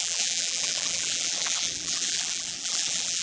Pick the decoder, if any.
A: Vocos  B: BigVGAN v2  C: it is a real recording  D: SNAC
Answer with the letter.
B